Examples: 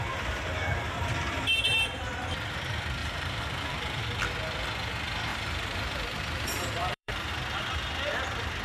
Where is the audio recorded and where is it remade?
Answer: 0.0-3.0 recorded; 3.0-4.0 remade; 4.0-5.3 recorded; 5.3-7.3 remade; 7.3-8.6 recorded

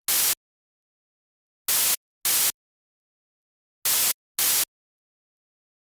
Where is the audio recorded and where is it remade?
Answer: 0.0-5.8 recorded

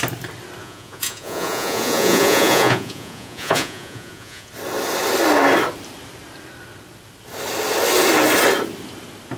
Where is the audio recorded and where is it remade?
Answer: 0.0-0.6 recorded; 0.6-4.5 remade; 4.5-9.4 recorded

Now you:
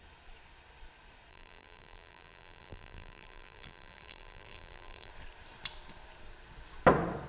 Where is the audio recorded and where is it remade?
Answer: 0.0-1.3 recorded; 1.3-5.1 remade; 5.1-7.3 recorded

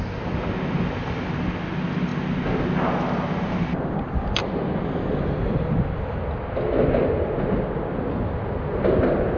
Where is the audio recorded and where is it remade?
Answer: 0.0-9.4 recorded

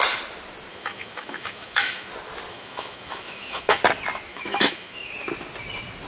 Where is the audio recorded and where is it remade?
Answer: 0.0-0.7 recorded; 0.7-2.1 remade; 2.1-2.5 recorded; 2.5-3.8 remade; 3.8-4.3 recorded; 4.3-5.1 remade; 5.1-6.1 recorded

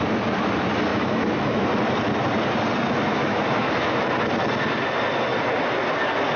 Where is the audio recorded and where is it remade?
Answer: 0.0-0.9 recorded; 0.9-1.6 remade; 1.6-3.1 recorded; 3.1-4.0 remade; 4.0-6.4 recorded

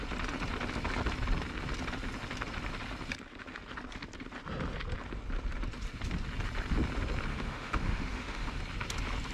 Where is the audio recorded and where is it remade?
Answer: 0.0-7.3 recorded; 7.3-8.6 remade; 8.6-9.3 recorded